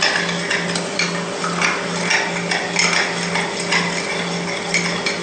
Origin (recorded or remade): recorded